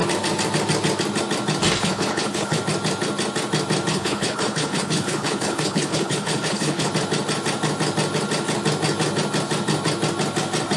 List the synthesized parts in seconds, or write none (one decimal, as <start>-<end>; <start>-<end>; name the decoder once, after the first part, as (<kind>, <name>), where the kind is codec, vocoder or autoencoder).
1.8-2.6 (codec, HILCodec); 3.9-6.9